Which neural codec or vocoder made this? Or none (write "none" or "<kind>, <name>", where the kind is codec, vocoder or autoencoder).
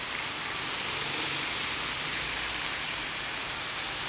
none